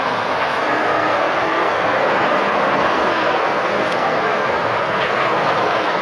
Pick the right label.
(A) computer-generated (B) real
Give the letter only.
A